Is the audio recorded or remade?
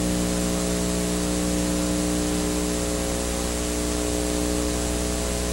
recorded